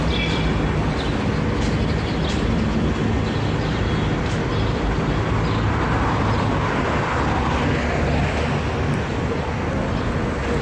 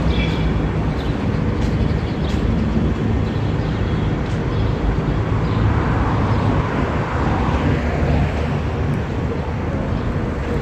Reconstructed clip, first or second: second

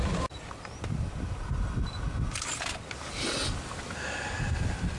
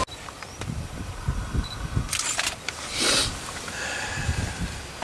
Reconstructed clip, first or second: second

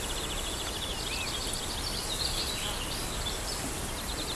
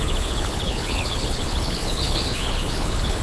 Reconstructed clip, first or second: second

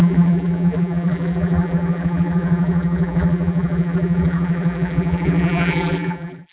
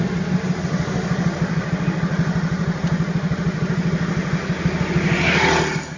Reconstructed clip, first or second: first